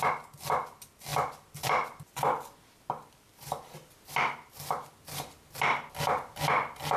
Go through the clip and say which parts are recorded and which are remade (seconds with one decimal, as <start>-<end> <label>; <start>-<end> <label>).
0.0-7.0 recorded